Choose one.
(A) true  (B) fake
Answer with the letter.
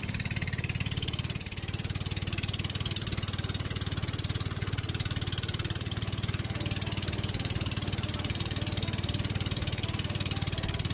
B